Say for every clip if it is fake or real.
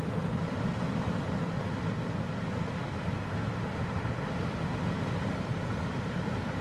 real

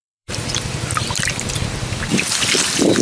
fake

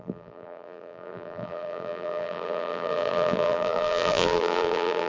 fake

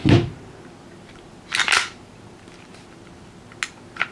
real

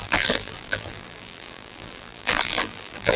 fake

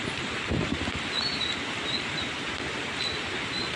real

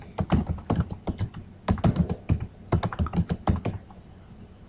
real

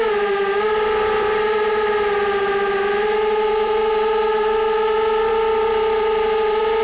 fake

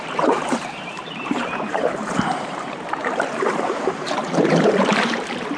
fake